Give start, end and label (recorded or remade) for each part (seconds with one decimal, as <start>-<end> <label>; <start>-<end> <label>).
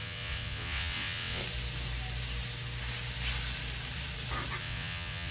0.0-1.4 remade; 1.4-4.6 recorded; 4.6-5.3 remade